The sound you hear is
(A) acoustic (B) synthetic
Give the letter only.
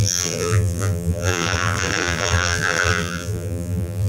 B